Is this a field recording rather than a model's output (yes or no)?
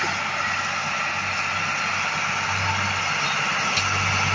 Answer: yes